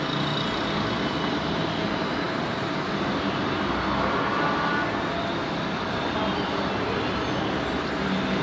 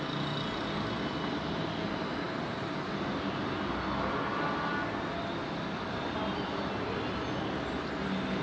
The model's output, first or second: first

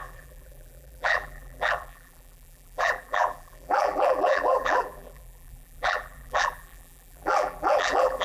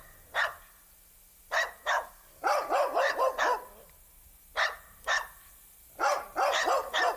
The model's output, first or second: first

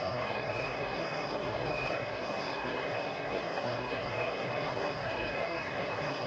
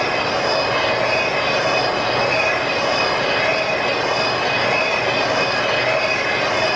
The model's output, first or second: first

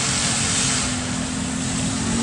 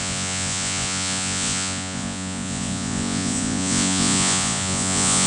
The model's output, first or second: second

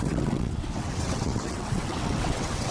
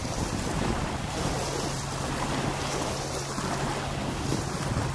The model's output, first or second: first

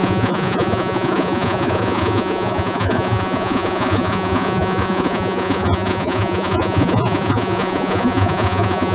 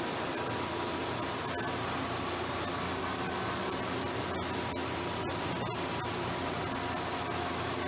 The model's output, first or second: first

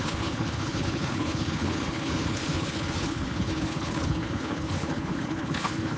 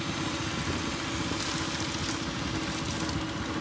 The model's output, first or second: first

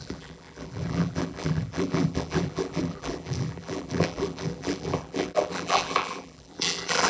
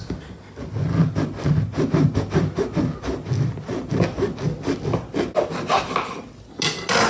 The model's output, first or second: first